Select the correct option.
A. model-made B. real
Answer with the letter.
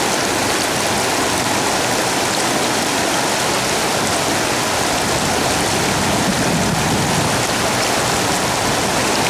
B